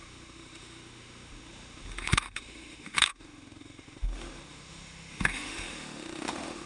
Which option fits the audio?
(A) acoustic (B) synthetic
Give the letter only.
B